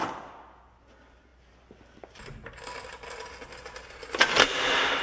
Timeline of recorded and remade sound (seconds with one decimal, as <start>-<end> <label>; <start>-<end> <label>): 0.0-5.0 recorded